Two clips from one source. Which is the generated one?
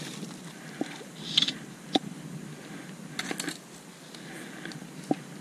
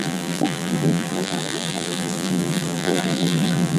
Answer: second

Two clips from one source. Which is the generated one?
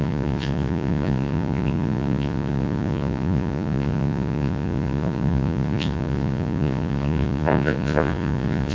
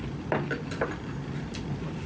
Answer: first